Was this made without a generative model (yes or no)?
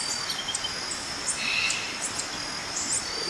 yes